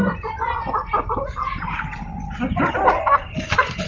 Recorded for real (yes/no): yes